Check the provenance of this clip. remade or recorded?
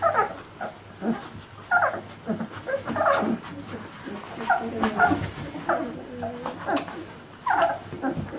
recorded